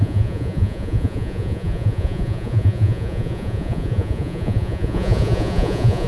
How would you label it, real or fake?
fake